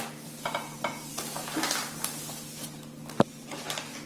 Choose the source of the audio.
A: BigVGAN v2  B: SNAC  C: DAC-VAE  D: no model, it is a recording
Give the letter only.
D